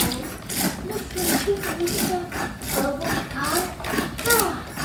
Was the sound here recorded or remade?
recorded